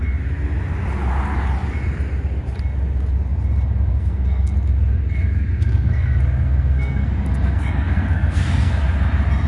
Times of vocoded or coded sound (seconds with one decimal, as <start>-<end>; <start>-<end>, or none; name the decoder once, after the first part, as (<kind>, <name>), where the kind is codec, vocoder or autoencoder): 3.9-8.8 (codec, SNAC)